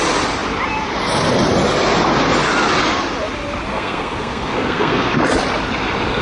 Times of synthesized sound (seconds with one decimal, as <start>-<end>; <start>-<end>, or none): 3.7-5.1